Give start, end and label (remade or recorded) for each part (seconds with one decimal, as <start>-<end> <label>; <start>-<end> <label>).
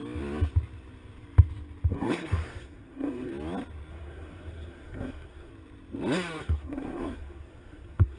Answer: 0.0-1.9 recorded; 1.9-3.3 remade; 3.3-3.9 recorded; 3.9-5.5 remade; 5.5-6.4 recorded; 6.4-8.2 remade